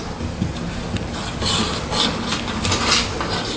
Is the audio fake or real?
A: real